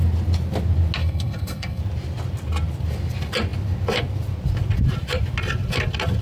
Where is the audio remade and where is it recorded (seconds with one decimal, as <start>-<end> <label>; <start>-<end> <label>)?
0.0-1.0 recorded; 1.0-1.8 remade; 1.8-6.2 recorded